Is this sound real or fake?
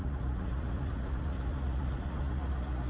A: fake